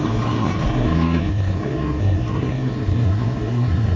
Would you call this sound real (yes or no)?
no